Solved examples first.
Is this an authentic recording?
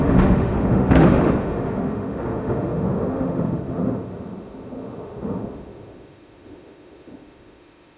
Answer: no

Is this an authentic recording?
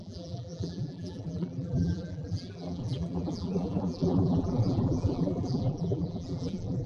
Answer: no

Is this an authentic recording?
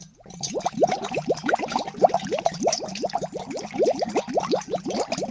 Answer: yes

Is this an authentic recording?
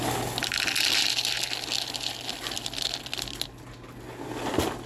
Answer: yes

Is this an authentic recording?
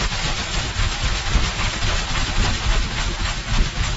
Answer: yes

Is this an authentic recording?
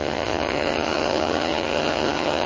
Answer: no